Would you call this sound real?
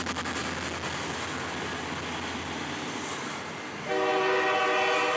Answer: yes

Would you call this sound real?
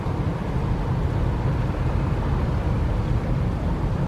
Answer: yes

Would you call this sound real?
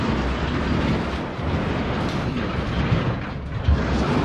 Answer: yes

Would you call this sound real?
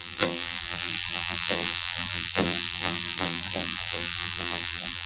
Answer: no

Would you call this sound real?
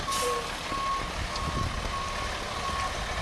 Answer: yes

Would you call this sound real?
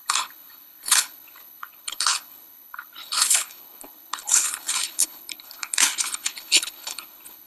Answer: no